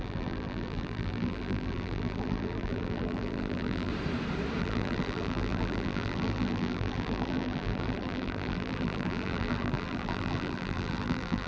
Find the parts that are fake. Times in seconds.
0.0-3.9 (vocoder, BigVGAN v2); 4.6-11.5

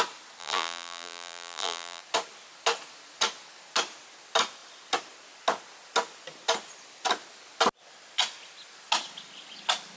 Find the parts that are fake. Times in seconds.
0.4-2.0 (vocoder, BigVGAN v2)

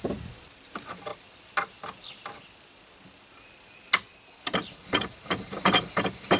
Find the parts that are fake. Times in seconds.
0.0-1.1 (vocoder, BigVGAN v2); 4.4-6.4

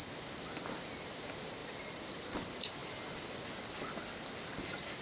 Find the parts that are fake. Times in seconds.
1.6-2.4 (vocoder, BigVGAN v2)